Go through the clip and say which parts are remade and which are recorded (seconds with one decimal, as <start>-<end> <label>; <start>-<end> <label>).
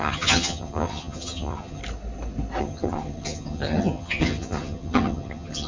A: 0.0-1.8 remade; 1.8-2.6 recorded; 2.6-5.7 remade